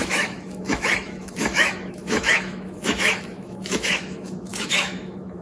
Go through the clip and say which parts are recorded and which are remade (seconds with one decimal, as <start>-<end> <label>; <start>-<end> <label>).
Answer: 0.0-5.4 remade